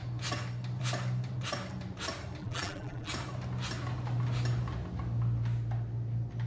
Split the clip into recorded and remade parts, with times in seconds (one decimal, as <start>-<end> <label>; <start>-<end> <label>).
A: 0.0-2.4 recorded; 2.4-3.1 remade; 3.1-6.5 recorded